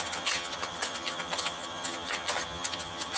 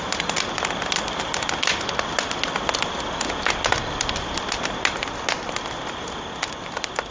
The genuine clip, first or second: second